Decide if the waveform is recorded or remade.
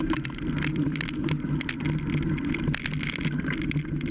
recorded